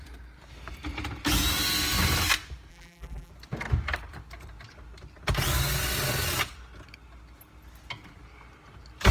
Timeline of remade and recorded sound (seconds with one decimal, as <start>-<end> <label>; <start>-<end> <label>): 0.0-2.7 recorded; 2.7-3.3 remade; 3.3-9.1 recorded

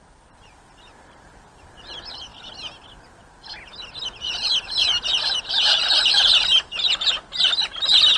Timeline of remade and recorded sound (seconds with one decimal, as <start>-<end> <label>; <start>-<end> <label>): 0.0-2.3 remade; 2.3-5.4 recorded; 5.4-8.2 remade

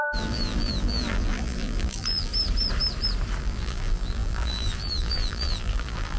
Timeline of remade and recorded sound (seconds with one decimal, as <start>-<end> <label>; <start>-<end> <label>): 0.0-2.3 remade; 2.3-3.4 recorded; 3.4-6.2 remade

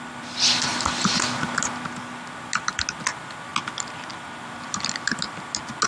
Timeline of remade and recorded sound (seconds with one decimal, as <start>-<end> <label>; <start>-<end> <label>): 0.0-5.9 recorded